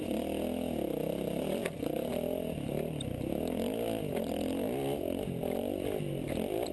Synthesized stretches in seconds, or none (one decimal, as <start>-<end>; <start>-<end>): none